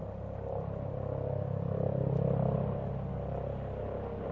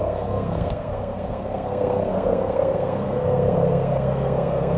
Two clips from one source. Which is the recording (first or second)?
first